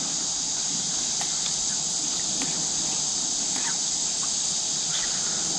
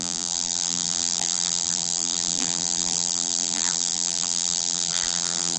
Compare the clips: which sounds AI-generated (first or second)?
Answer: second